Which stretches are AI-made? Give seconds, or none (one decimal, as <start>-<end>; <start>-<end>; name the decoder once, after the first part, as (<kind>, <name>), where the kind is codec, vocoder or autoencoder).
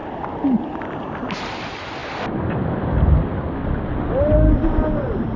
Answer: none